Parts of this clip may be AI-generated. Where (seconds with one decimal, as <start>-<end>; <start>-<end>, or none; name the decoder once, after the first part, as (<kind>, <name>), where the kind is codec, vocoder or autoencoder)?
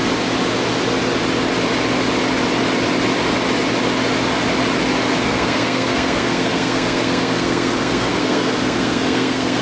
5.2-9.6 (codec, SNAC)